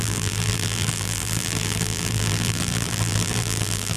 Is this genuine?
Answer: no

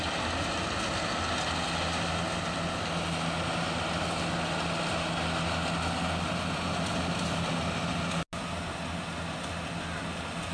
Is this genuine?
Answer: yes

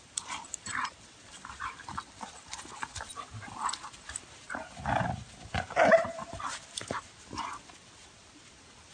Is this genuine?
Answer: no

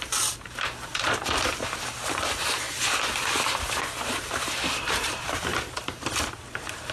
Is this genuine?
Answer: no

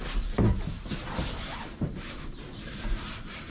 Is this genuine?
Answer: no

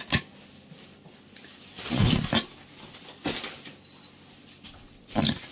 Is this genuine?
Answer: yes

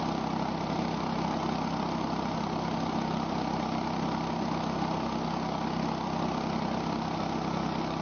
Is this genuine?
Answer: yes